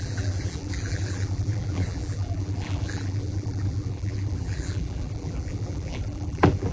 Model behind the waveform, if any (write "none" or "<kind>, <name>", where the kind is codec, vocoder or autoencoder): vocoder, BigVGAN v2